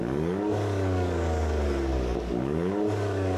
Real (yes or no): no